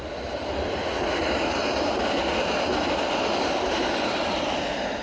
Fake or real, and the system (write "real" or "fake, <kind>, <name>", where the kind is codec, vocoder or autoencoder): real